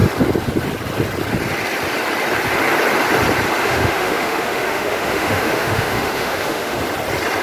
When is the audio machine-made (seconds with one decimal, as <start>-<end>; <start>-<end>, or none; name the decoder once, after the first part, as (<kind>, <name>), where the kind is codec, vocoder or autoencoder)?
3.6-6.8 (autoencoder, DAC-VAE)